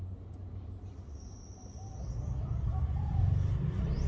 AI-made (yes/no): no